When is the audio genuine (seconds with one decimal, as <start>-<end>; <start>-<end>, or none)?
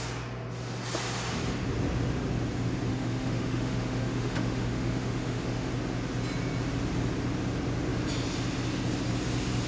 0.0-2.9; 5.7-9.7